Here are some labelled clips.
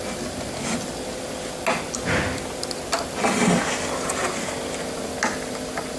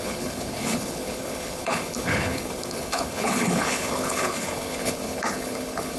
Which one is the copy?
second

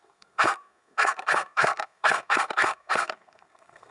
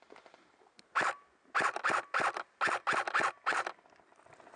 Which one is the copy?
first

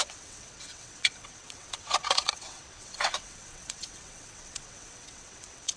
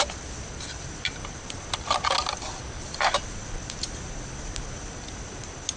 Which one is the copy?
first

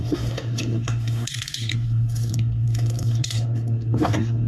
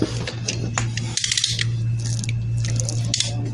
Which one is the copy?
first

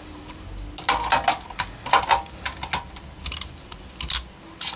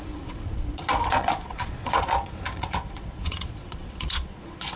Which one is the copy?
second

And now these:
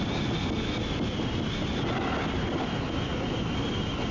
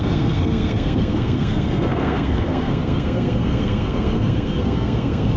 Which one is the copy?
second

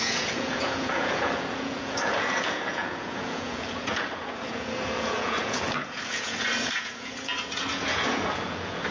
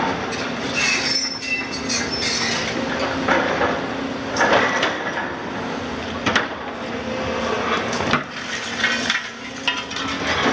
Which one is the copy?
first